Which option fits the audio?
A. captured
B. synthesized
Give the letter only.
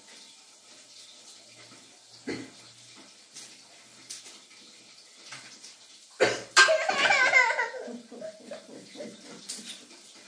A